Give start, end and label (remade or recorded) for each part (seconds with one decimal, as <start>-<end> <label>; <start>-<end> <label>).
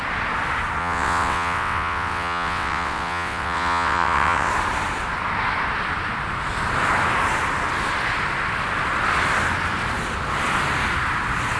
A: 0.0-0.8 recorded; 0.8-4.5 remade; 4.5-11.6 recorded